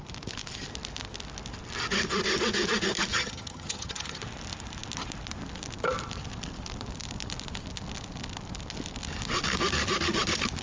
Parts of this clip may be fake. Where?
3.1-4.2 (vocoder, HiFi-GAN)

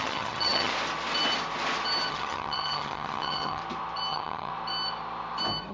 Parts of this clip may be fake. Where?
0.0-0.7 (vocoder, HiFi-GAN); 2.1-3.6; 4.1-4.5

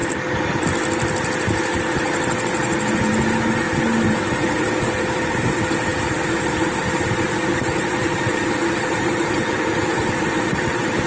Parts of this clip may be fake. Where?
none

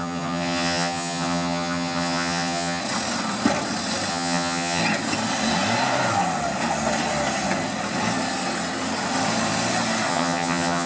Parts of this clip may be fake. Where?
0.0-2.8 (vocoder, HiFi-GAN); 4.1-4.8; 10.1-10.9

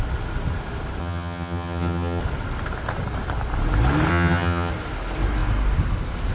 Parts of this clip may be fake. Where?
1.0-2.2 (vocoder, HiFi-GAN); 4.1-4.7

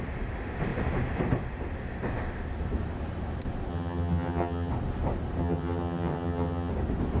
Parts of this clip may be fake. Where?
3.7-4.7 (vocoder, HiFi-GAN); 5.4-6.7